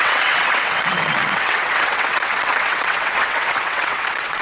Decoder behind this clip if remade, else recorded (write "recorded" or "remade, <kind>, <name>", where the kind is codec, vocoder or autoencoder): remade, vocoder, WaveNeXt